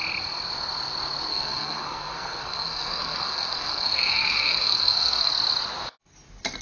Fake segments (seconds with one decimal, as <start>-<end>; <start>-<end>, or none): 1.3-5.3